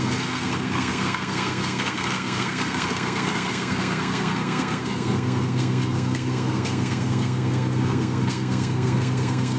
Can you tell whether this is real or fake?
fake